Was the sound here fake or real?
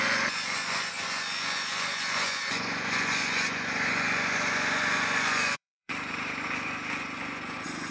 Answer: fake